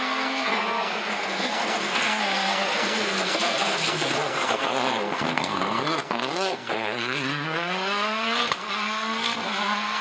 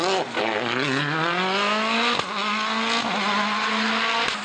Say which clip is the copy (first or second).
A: first